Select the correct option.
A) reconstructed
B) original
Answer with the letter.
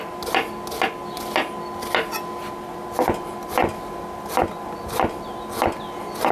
B